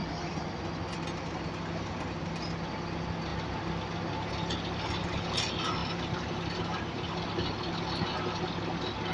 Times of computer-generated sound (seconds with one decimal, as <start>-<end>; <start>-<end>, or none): none

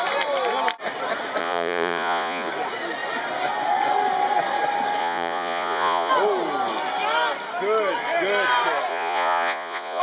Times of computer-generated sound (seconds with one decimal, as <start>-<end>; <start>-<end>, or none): 1.4-2.5; 5.0-6.1; 8.9-10.0

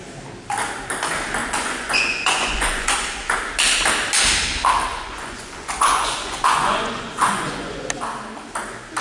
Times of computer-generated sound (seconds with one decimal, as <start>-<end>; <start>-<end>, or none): 1.4-3.4; 4.9-7.9

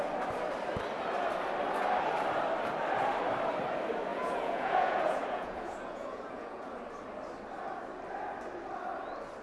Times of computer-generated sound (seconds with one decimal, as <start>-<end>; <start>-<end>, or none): 4.1-6.7

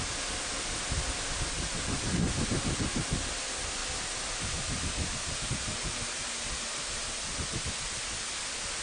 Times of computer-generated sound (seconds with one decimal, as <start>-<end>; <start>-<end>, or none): none

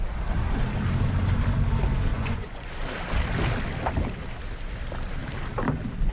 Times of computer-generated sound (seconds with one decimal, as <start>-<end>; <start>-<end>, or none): 2.1-2.7

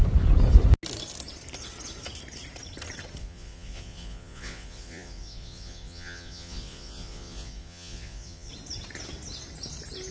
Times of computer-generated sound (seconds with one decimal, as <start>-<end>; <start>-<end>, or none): 3.2-8.5